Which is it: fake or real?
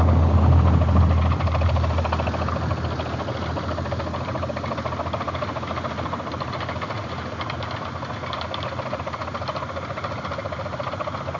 real